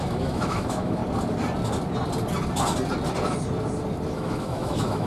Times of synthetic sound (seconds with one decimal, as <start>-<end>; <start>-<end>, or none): 0.0-1.0; 4.1-5.1